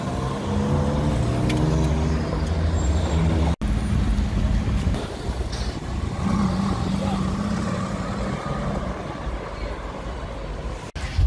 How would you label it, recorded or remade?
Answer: recorded